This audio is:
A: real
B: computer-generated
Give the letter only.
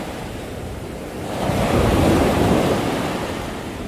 B